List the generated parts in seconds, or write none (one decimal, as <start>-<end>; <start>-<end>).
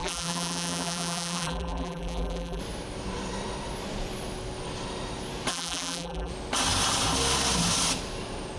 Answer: 0.0-2.6; 5.5-6.3